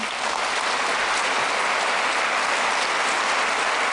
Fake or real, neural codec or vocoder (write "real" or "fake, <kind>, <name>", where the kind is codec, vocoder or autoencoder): real